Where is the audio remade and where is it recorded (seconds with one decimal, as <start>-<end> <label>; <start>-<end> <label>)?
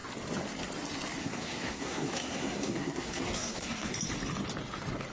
0.0-1.2 recorded; 1.2-3.9 remade; 3.9-5.1 recorded